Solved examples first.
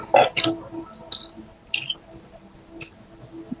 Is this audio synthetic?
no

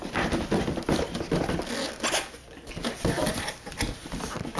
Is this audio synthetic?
no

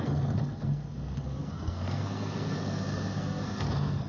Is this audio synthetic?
yes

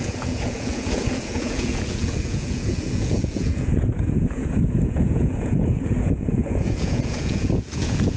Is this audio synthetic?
yes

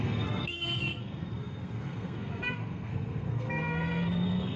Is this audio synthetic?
yes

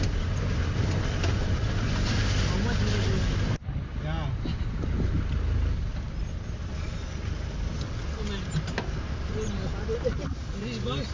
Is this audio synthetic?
no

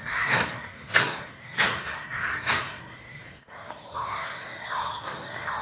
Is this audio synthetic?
yes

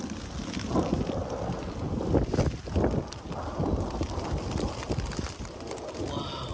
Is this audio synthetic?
no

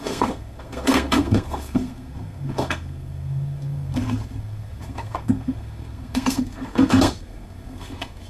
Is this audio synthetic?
yes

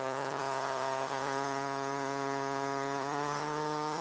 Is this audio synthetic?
yes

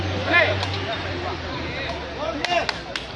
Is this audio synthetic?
no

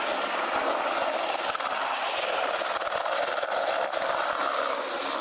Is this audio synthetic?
no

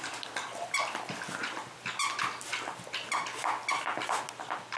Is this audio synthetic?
no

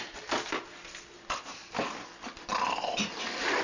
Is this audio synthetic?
no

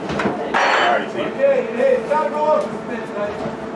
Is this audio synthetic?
no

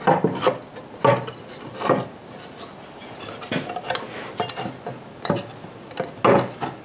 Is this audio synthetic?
no